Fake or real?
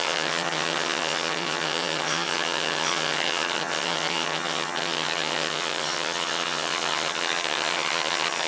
fake